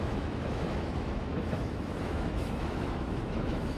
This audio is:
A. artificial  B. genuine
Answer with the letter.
A